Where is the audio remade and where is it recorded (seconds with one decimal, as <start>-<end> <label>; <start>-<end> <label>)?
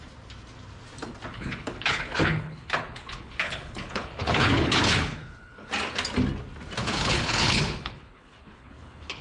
0.0-1.3 recorded; 1.3-5.7 remade; 5.7-6.8 recorded; 6.8-9.2 remade